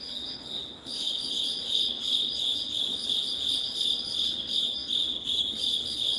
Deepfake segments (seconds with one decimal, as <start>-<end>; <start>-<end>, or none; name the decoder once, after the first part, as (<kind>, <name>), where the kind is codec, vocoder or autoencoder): 0.0-6.2 (codec, HILCodec)